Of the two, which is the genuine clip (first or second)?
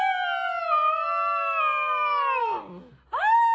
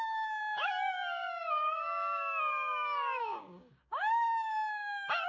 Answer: first